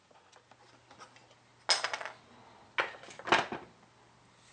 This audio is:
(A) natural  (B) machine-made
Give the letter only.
A